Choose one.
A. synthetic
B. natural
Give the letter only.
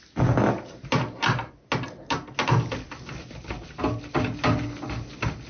B